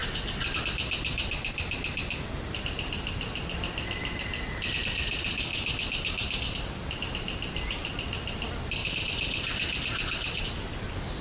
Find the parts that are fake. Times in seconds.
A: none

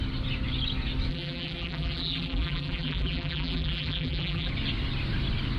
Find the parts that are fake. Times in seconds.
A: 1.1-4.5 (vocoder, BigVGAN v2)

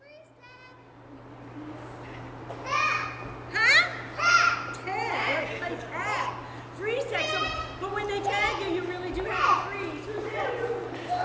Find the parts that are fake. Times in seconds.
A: none

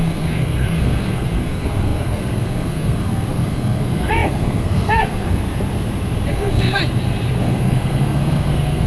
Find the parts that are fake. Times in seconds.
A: 0.0-5.4 (codec, SNAC); 6.3-6.8; 7.4-8.9

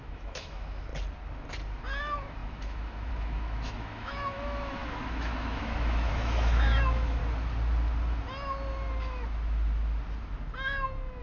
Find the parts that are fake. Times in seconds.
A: 0.0-0.9 (autoencoder, DAC-VAE); 2.0-7.2

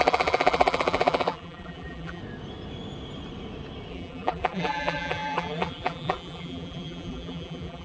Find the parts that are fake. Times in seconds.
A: 0.0-2.2 (vocoder, BigVGAN v2); 3.9-7.8

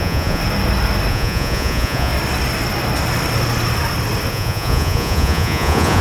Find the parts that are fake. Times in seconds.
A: 0.0-0.4 (vocoder, Vocos); 1.1-2.1; 4.3-6.0